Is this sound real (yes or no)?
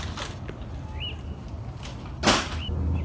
yes